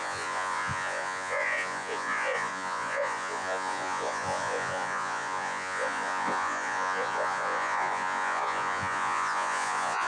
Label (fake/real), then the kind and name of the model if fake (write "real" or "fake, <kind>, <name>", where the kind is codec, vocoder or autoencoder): fake, vocoder, Vocos